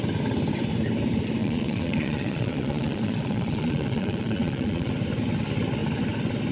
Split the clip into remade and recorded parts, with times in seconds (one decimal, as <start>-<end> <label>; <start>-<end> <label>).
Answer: 0.0-1.4 recorded; 1.4-4.9 remade; 4.9-6.5 recorded

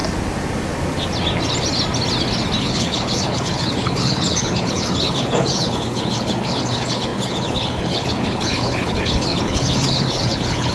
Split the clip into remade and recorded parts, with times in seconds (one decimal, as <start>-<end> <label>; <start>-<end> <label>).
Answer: 0.0-2.6 recorded; 2.6-10.7 remade

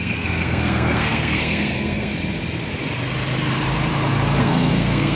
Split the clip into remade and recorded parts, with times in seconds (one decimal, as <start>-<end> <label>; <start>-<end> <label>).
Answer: 0.0-2.1 remade; 2.1-4.4 recorded; 4.4-5.2 remade